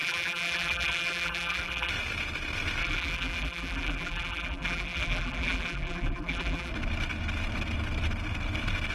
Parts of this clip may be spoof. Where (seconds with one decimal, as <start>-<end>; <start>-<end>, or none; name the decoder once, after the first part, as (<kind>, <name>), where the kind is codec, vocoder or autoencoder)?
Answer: 0.0-1.9 (vocoder, BigVGAN v2); 2.8-6.7

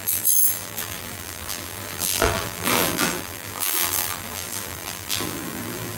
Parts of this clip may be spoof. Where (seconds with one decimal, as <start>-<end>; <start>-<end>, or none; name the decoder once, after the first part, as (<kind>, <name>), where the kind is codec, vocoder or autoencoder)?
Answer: 0.0-6.0 (vocoder, BigVGAN v2)

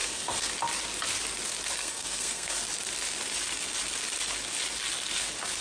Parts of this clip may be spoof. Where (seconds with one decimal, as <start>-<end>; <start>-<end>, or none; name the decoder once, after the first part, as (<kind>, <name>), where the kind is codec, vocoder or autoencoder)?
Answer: 0.0-0.5 (codec, SNAC); 1.8-2.6

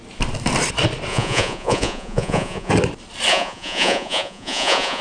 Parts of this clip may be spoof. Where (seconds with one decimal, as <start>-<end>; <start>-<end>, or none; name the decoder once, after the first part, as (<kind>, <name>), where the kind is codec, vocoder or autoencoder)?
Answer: 1.1-2.7 (vocoder, Vocos); 3.3-5.0

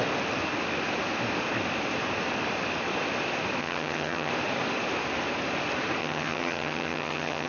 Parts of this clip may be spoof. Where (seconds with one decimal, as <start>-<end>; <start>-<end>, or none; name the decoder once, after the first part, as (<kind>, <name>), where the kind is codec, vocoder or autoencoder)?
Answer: 3.6-4.3 (vocoder, HiFi-GAN); 6.0-7.5

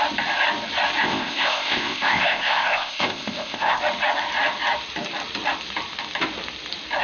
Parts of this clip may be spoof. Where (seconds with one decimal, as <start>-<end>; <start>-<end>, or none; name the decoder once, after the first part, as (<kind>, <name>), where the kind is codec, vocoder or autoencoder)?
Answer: 1.0-3.8 (codec, ZipCodec)